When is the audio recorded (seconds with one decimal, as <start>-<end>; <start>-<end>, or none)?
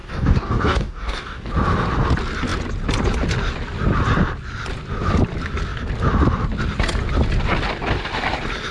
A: 1.5-8.7